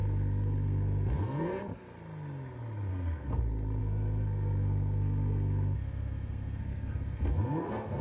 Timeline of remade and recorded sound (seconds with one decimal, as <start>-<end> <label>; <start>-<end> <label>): 0.0-1.6 remade; 1.6-2.9 recorded; 2.9-3.4 remade; 3.4-3.8 recorded; 3.8-8.0 remade